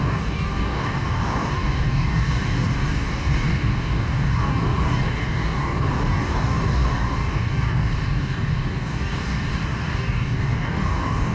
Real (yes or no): no